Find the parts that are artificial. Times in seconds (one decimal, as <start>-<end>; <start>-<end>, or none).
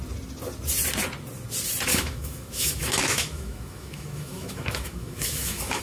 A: 1.9-5.8